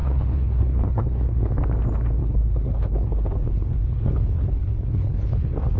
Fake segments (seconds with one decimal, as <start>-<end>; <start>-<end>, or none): 0.0-1.5; 2.2-5.8